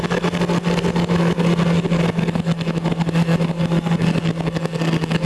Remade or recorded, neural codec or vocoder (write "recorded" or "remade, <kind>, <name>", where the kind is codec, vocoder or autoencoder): remade, codec, SNAC